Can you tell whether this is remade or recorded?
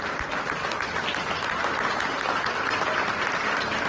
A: remade